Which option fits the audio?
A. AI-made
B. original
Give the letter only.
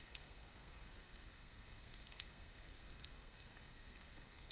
A